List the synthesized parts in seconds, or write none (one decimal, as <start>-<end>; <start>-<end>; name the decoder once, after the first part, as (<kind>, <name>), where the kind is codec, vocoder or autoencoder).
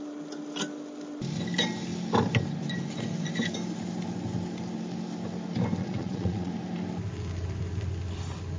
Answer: 5.8-6.5 (vocoder, Vocos)